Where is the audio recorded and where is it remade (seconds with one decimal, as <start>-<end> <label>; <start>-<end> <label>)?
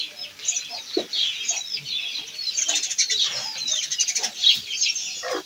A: 0.0-2.1 recorded; 2.1-5.5 remade